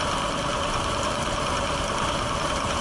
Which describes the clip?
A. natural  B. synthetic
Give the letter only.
B